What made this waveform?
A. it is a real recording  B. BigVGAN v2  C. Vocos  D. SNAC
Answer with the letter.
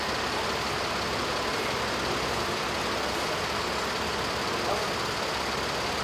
A